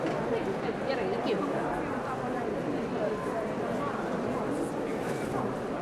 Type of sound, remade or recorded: recorded